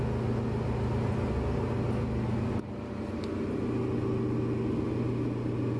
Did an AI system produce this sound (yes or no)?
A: no